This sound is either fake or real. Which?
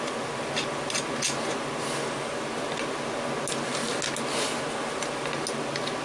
real